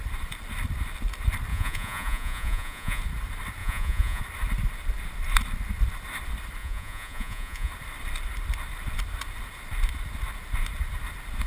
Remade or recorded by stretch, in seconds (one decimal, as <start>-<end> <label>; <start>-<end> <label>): 0.0-1.5 recorded; 1.5-3.0 remade; 3.0-3.6 recorded; 3.6-4.2 remade; 4.2-6.6 recorded; 6.6-7.7 remade; 7.7-11.5 recorded